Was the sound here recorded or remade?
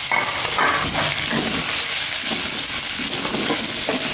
recorded